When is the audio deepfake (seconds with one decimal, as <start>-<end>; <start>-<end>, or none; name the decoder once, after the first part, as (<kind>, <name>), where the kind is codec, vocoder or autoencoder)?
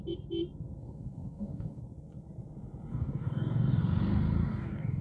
0.8-1.8 (codec, DAC); 2.9-3.8; 4.4-5.0